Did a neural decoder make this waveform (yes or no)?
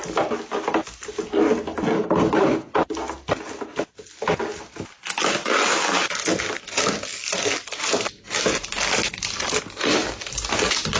no